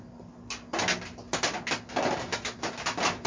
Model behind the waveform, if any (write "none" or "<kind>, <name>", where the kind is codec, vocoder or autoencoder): none